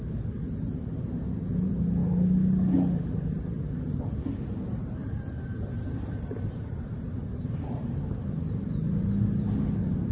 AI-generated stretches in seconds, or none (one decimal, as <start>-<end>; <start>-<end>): 4.8-8.0